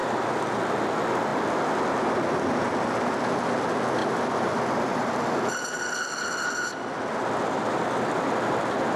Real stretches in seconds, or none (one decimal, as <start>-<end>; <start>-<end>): 0.6-4.0; 5.6-9.0

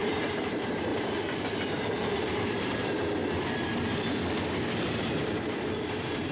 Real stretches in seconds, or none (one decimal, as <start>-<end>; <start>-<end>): 3.2-4.8

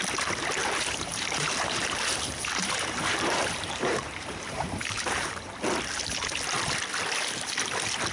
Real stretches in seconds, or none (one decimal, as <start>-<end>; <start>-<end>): 0.0-0.6; 5.5-8.1